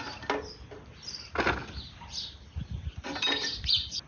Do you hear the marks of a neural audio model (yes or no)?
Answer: no